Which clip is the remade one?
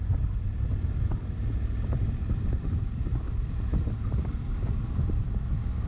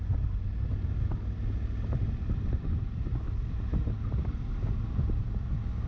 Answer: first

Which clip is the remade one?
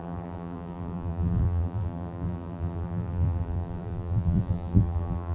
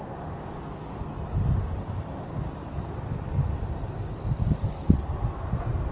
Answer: first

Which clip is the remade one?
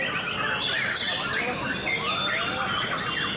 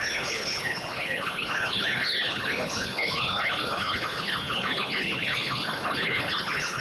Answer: second